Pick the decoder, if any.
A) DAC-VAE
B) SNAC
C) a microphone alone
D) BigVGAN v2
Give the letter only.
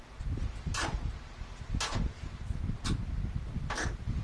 C